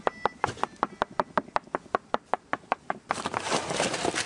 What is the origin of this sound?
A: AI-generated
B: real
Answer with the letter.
B